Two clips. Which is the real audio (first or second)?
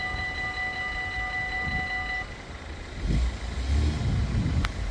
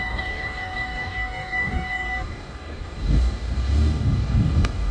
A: first